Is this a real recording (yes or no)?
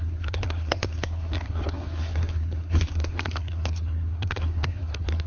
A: no